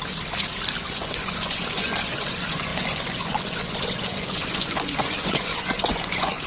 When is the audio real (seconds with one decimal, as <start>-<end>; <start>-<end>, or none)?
0.0-0.8